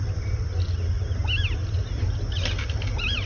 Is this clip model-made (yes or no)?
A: no